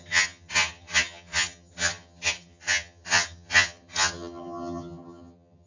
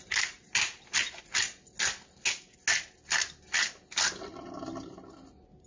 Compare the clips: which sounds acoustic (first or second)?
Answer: second